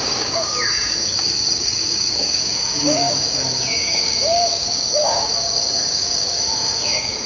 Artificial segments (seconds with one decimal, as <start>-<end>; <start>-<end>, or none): 0.0-7.3